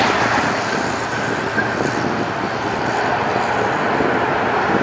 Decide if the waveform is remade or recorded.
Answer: recorded